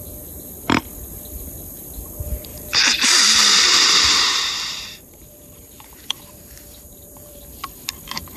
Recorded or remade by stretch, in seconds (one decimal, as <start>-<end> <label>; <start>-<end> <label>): 0.0-2.5 recorded; 2.5-7.4 remade; 7.4-8.4 recorded